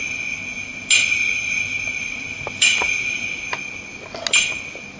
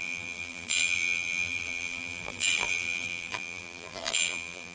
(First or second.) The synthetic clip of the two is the second